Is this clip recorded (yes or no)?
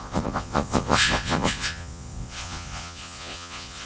no